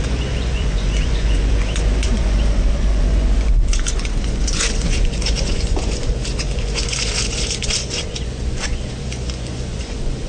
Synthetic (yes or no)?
yes